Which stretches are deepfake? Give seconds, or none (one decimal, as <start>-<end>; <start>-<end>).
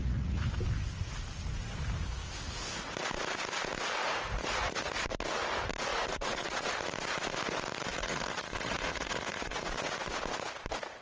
0.0-0.5; 4.0-4.9; 5.9-6.7; 7.9-10.1